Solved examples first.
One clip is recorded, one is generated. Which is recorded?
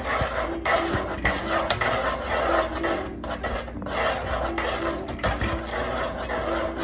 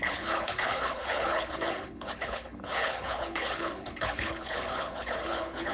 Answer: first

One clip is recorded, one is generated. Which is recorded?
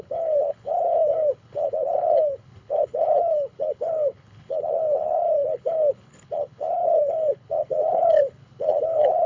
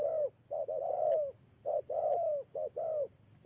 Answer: second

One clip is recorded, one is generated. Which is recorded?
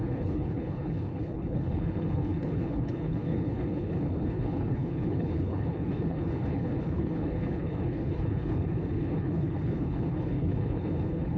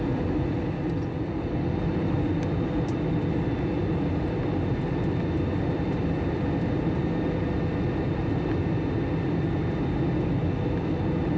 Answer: second